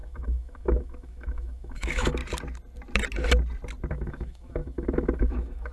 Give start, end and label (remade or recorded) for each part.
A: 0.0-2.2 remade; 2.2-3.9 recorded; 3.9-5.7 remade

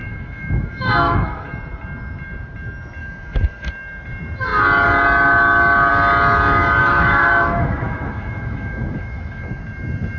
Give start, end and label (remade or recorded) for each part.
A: 0.0-1.5 remade; 1.5-3.0 recorded; 3.0-3.7 remade; 3.7-6.8 recorded; 6.8-9.6 remade; 9.6-10.2 recorded

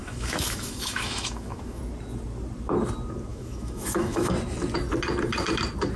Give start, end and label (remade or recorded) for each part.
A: 0.0-1.8 remade; 1.8-3.3 recorded; 3.3-4.3 remade; 4.3-6.0 recorded

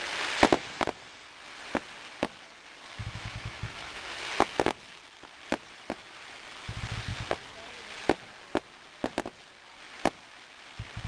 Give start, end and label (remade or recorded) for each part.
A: 0.0-3.0 recorded; 3.0-4.2 remade; 4.2-11.1 recorded

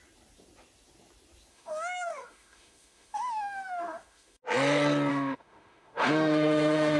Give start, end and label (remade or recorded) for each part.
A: 0.0-1.5 recorded; 1.5-4.4 remade; 4.4-5.1 recorded; 5.1-7.0 remade

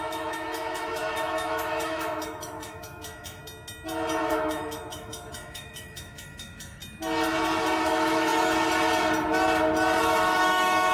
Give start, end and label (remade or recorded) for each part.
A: 0.0-3.4 remade; 3.4-4.3 recorded; 4.3-6.8 remade; 6.8-7.8 recorded; 7.8-8.3 remade; 8.3-10.0 recorded; 10.0-10.9 remade